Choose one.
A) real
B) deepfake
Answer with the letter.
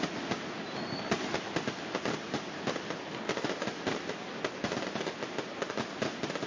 A